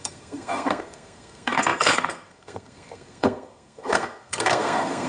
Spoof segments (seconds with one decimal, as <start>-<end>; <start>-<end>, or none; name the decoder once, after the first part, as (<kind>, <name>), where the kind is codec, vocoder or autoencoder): 0.0-5.1 (codec, SNAC)